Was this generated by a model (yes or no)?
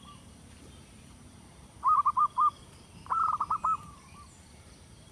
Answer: yes